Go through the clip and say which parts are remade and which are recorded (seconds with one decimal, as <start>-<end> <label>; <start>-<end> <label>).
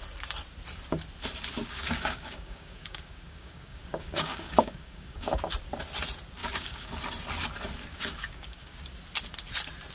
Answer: 0.0-1.6 recorded; 1.6-5.5 remade; 5.5-6.4 recorded; 6.4-6.9 remade; 6.9-7.9 recorded; 7.9-8.8 remade; 8.8-9.9 recorded